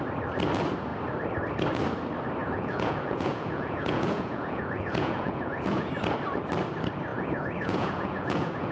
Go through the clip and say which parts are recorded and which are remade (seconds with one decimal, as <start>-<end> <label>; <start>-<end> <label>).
0.0-2.4 recorded; 2.4-5.9 remade; 5.9-7.1 recorded; 7.1-8.7 remade